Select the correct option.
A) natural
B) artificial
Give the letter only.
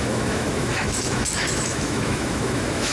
B